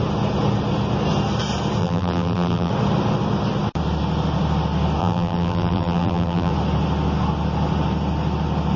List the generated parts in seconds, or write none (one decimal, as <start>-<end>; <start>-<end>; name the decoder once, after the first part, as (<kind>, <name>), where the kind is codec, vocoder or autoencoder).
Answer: 1.8-2.7 (vocoder, BigVGAN v2); 5.0-6.5